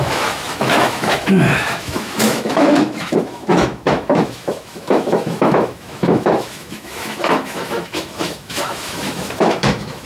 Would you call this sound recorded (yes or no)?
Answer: no